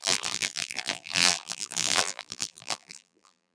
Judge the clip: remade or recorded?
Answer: remade